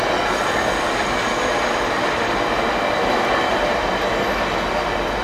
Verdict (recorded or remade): recorded